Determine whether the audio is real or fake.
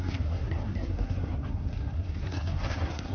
fake